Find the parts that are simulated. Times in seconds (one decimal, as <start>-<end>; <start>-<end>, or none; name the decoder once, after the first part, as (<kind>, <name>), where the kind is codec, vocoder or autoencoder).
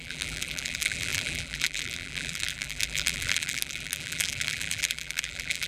0.0-5.7 (vocoder, BigVGAN v2)